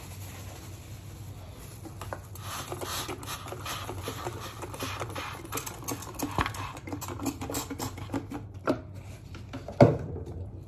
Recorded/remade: recorded